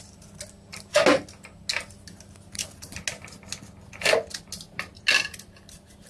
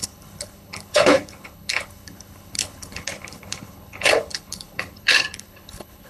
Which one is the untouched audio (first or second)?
first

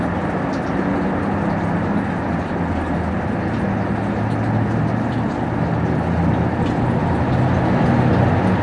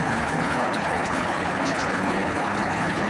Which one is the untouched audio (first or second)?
first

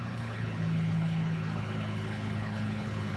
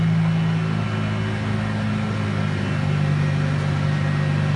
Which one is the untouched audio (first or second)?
second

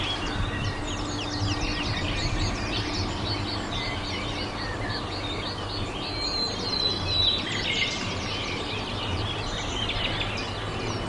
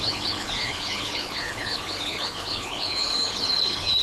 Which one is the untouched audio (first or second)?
first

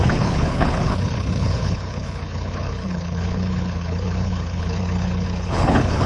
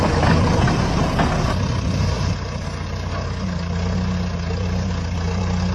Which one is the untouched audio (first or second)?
second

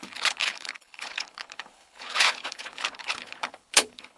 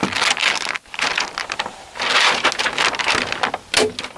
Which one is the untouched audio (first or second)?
second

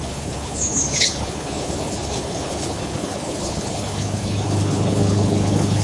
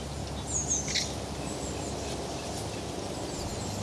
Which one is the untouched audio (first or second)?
second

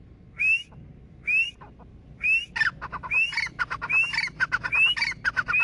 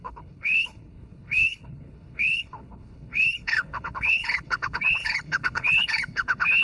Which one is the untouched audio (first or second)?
first